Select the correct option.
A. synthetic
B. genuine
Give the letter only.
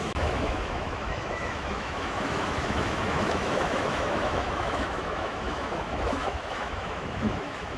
A